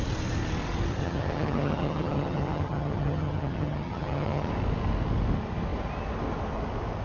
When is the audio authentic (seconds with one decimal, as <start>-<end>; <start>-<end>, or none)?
0.0-1.0; 4.5-7.0